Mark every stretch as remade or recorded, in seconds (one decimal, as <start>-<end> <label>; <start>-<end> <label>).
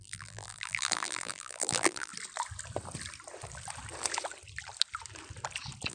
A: 0.0-2.1 remade; 2.1-5.9 recorded